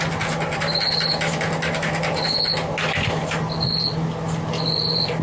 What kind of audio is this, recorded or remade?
recorded